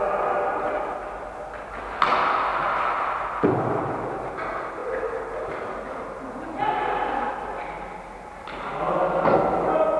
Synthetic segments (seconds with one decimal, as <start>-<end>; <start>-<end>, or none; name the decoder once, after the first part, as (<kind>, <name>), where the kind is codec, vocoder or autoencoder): none